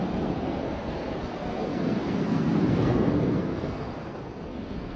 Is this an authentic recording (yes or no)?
no